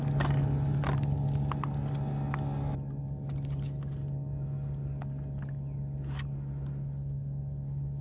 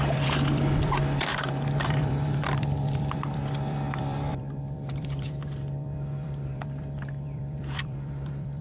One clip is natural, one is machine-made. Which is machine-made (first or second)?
second